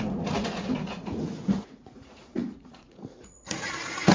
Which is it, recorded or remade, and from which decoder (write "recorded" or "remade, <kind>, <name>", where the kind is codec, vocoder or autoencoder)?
remade, vocoder, Vocos